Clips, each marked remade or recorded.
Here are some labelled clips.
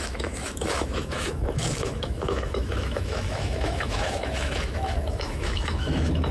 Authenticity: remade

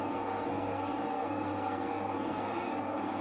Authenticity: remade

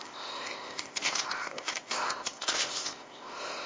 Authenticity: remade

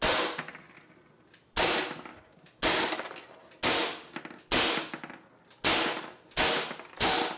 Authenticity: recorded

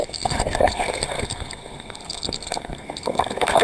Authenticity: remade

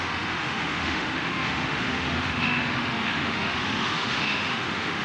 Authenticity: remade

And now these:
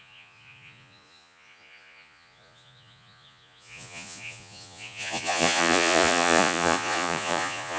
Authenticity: remade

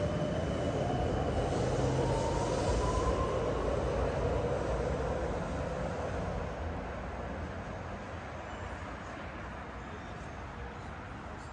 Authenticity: recorded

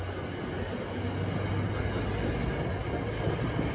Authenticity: recorded